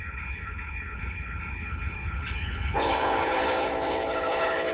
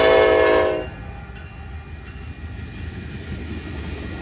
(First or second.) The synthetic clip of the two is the first